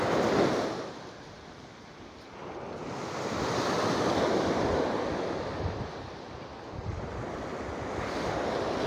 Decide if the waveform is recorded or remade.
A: recorded